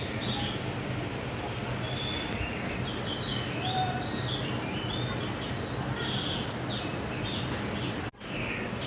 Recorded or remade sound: recorded